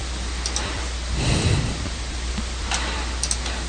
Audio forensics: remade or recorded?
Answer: recorded